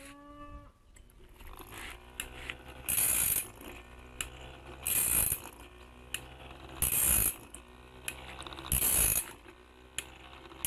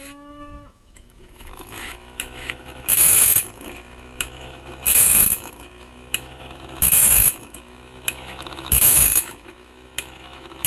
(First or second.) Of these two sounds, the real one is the first